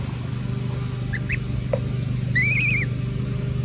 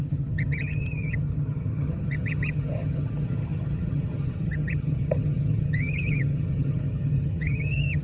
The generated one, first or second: second